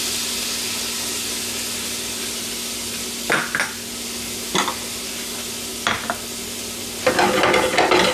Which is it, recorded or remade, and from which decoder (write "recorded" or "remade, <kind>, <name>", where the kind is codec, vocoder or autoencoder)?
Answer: recorded